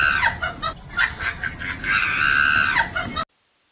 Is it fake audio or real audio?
real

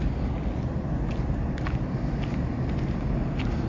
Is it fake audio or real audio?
real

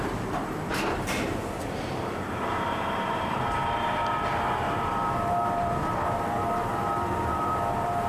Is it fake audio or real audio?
fake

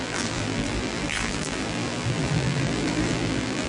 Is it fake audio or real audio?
fake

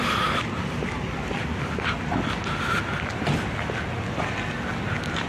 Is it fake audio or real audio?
real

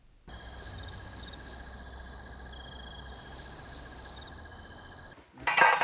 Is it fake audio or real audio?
real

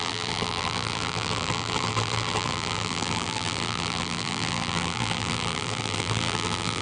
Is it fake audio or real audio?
fake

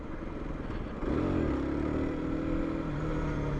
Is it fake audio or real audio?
real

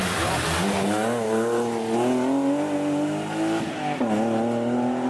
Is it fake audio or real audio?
real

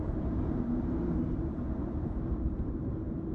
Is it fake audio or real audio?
fake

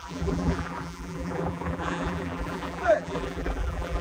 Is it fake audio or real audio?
fake